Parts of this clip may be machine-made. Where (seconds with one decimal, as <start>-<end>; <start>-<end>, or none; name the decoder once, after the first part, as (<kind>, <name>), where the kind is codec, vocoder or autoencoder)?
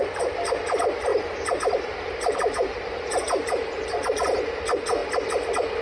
1.1-4.6 (vocoder, BigVGAN v2)